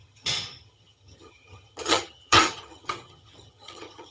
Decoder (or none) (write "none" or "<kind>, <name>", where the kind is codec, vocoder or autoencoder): vocoder, HiFi-GAN